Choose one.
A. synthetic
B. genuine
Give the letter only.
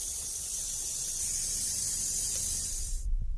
B